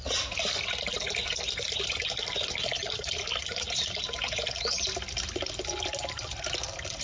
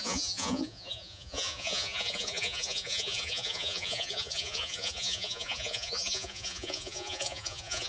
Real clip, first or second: first